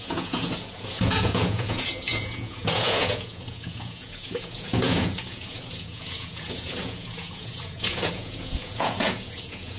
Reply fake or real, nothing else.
fake